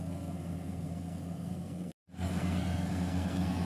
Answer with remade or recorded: remade